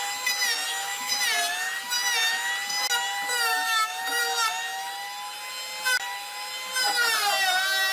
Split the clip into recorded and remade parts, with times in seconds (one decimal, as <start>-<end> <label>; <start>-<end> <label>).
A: 0.0-0.7 recorded; 0.7-1.2 remade; 1.2-3.5 recorded; 3.5-4.0 remade; 4.0-7.9 recorded